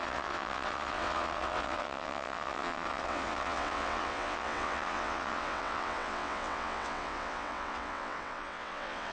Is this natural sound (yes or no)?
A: no